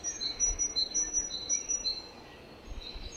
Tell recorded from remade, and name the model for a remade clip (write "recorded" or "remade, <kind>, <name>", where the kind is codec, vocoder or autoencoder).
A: recorded